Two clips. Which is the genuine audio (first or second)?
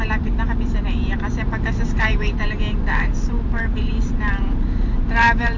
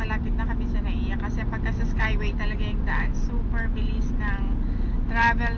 second